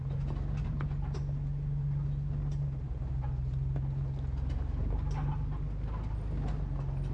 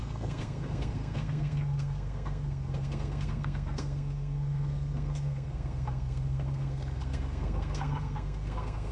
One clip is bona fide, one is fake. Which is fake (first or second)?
second